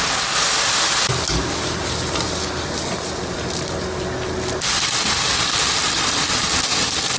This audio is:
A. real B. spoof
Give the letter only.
A